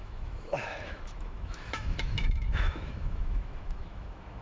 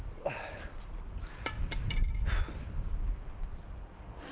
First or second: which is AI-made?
first